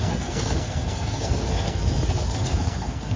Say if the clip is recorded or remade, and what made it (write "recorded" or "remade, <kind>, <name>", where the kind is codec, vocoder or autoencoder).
remade, codec, SNAC